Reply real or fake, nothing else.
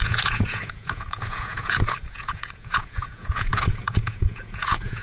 fake